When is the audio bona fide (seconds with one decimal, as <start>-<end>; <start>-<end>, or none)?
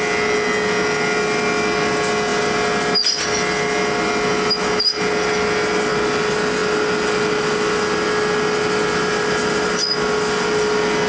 0.0-11.1